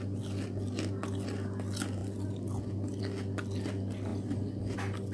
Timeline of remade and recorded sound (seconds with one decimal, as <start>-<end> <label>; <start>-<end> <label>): 0.0-5.1 recorded